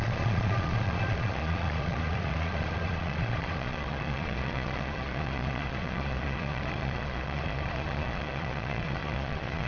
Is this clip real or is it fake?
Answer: fake